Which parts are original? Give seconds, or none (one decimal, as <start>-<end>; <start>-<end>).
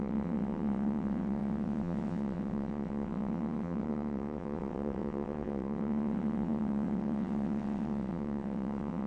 none